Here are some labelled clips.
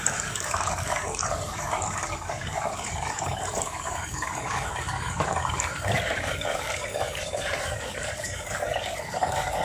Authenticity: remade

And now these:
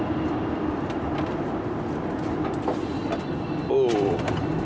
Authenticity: recorded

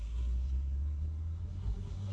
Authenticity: remade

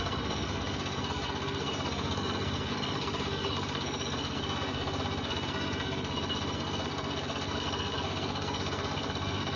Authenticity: remade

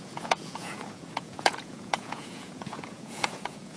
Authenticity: remade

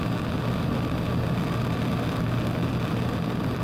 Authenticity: recorded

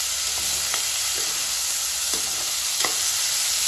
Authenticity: recorded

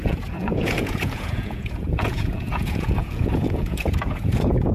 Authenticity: remade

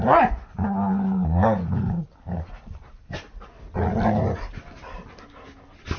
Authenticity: recorded